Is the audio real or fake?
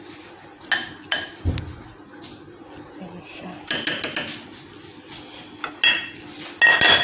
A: real